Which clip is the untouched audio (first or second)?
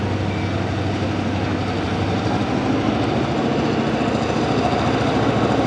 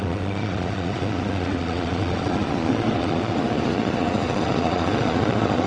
first